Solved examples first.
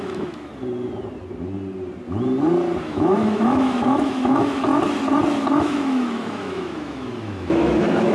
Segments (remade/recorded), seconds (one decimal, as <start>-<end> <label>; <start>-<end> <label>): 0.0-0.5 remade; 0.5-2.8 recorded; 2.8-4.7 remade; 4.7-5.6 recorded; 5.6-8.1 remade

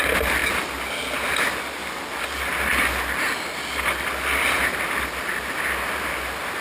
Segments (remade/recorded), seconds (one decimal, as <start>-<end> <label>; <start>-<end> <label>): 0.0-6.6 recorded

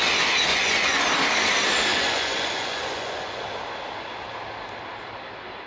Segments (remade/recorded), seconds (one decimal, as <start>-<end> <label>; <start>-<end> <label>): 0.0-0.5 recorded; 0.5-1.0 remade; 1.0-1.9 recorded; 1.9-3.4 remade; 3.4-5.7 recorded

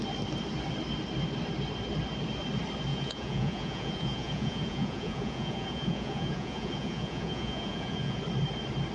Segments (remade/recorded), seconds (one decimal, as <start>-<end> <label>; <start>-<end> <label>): 0.0-2.9 recorded; 2.9-8.2 remade; 8.2-8.9 recorded

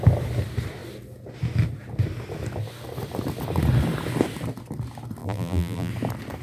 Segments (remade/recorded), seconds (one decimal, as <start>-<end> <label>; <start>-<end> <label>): 0.0-5.2 recorded; 5.2-5.9 remade; 5.9-6.4 recorded